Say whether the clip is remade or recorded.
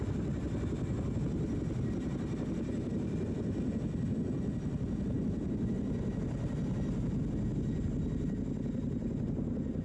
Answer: recorded